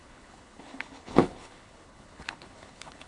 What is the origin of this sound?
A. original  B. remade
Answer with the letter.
B